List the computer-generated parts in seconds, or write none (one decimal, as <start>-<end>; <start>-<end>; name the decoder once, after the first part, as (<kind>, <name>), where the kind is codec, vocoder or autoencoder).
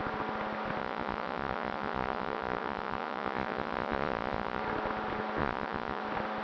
0.8-4.6 (vocoder, Vocos); 5.4-6.0